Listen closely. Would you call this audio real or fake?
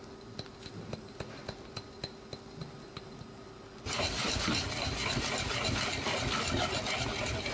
real